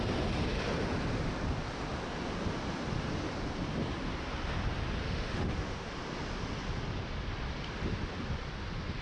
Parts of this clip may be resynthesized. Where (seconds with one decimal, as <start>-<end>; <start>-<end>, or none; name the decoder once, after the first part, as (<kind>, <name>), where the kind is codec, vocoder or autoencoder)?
5.0-5.9 (autoencoder, DAC-VAE)